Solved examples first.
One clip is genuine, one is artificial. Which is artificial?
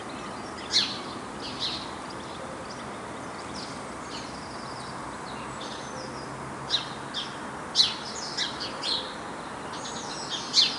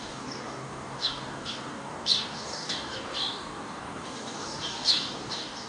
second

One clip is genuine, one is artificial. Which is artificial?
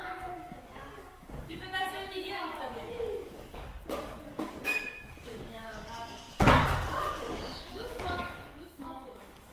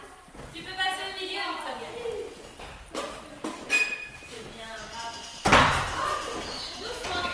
first